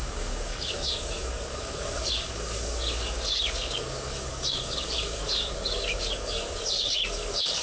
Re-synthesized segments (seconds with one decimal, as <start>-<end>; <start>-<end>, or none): 0.0-7.6

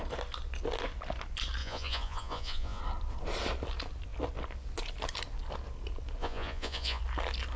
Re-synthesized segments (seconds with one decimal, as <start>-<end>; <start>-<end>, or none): 1.6-2.8; 6.2-7.0

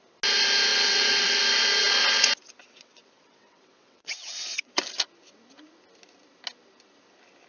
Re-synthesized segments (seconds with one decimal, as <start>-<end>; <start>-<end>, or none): 0.7-1.4; 2.6-4.8

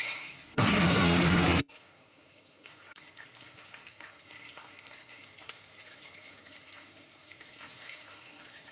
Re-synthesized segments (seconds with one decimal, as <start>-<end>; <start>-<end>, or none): 0.0-8.7

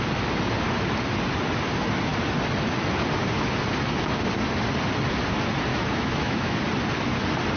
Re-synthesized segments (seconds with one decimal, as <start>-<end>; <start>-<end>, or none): 5.7-6.6

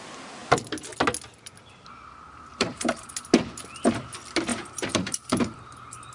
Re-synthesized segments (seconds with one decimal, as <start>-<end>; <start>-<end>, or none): 2.5-3.1; 4.5-6.1

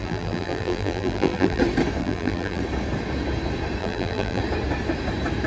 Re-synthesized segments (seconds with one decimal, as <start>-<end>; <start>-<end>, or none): 0.0-1.6; 2.0-2.6; 3.8-4.4